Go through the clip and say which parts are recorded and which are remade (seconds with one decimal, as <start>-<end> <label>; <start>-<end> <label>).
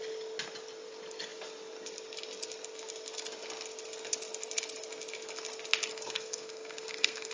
0.0-5.9 recorded; 5.9-7.3 remade